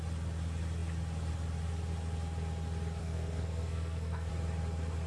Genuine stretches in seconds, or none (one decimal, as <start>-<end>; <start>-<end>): 0.0-3.0; 4.3-5.1